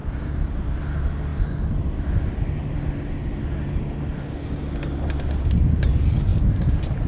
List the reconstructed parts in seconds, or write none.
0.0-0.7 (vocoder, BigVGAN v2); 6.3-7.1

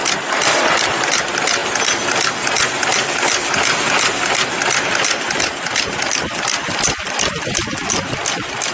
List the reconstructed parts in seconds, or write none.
0.0-1.1 (vocoder, BigVGAN v2); 6.2-7.6

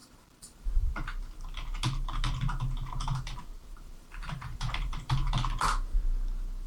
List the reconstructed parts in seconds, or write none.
0.0-0.7 (vocoder, BigVGAN v2); 3.6-5.3

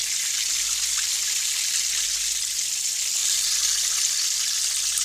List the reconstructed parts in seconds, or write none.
0.0-1.4 (vocoder, BigVGAN v2); 3.2-4.6

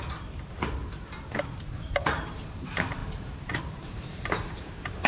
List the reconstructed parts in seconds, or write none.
0.0-3.0 (vocoder, BigVGAN v2); 3.6-5.1

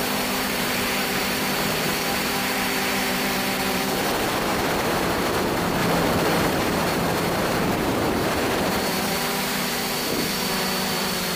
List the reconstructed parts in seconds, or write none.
0.0-5.8 (vocoder, BigVGAN v2); 6.5-11.4

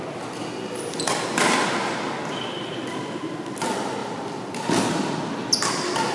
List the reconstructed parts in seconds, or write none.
2.2-2.9 (vocoder, BigVGAN v2); 4.0-5.6

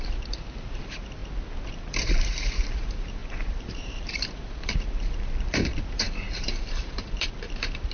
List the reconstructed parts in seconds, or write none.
0.0-1.2 (vocoder, BigVGAN v2); 1.7-7.9